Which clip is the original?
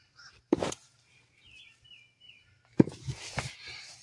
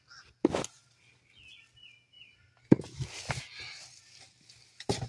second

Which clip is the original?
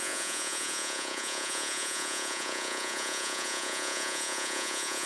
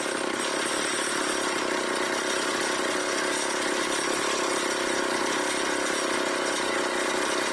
second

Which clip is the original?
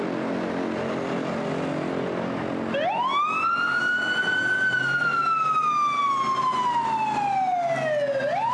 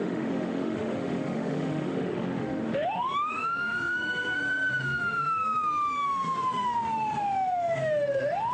first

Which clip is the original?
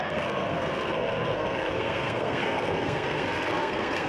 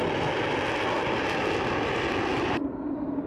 second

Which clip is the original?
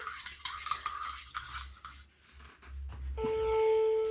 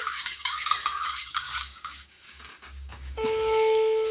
first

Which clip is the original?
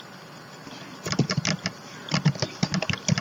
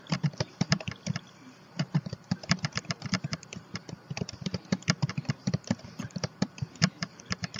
first